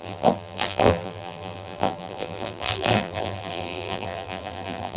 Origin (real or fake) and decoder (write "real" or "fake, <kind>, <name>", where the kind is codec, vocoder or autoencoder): fake, vocoder, BigVGAN v2